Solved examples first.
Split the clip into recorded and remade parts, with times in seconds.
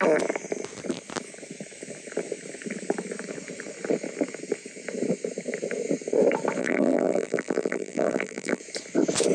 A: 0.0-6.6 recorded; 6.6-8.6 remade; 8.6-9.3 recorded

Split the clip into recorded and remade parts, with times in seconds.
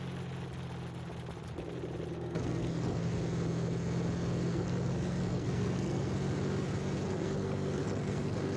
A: 0.0-2.1 recorded; 2.1-3.1 remade; 3.1-4.5 recorded; 4.5-6.1 remade; 6.1-7.1 recorded; 7.1-8.6 remade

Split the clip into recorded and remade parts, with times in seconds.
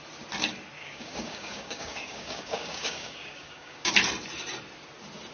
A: 0.0-0.8 recorded; 0.8-3.9 remade; 3.9-5.3 recorded